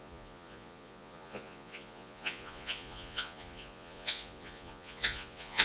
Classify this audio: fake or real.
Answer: fake